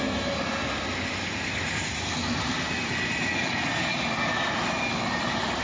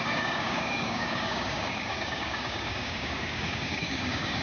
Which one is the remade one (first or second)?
second